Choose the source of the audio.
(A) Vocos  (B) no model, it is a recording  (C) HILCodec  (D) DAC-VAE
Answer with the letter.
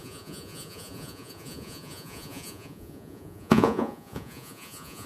A